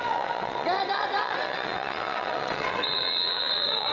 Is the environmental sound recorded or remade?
remade